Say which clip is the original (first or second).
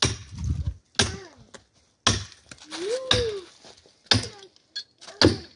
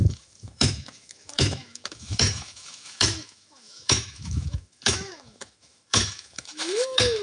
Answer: first